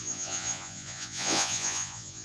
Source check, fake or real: fake